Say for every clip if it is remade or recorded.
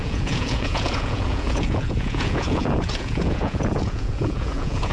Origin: remade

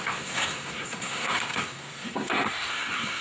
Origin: remade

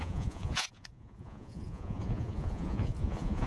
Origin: remade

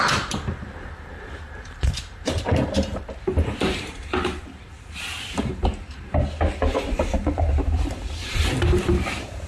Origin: remade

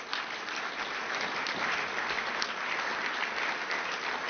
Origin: recorded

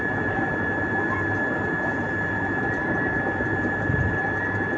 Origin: recorded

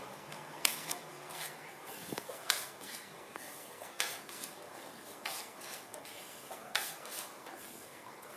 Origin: remade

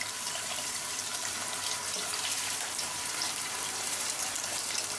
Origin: remade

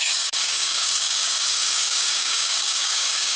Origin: remade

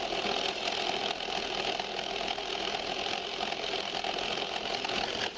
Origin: recorded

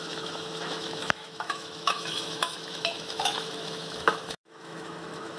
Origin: remade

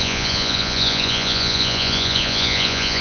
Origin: remade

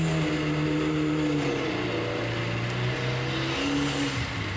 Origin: recorded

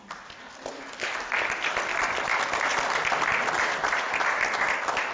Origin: recorded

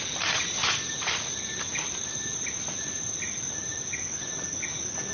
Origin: recorded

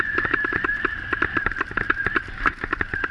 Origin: recorded